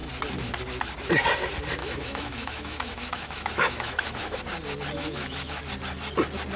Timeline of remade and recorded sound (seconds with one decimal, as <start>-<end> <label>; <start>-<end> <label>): 0.0-1.8 recorded; 1.8-4.4 remade; 4.4-5.0 recorded; 5.0-5.6 remade; 5.6-6.6 recorded